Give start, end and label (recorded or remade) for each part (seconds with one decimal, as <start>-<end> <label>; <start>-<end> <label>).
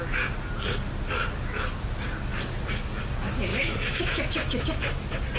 0.0-3.5 recorded; 3.5-4.6 remade; 4.6-5.4 recorded